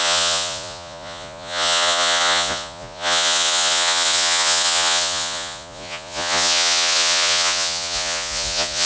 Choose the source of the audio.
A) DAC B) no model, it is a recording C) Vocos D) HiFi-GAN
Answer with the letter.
C